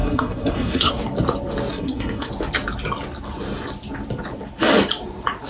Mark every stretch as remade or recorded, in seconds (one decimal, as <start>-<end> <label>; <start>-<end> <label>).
0.0-0.9 remade; 0.9-1.7 recorded; 1.7-2.3 remade; 2.3-5.5 recorded